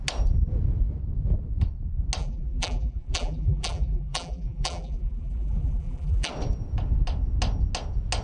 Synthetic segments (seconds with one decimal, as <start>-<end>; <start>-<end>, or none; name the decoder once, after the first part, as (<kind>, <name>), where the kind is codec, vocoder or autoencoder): 2.2-6.3 (vocoder, BigVGAN v2)